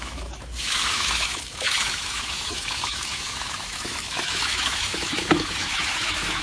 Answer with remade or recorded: remade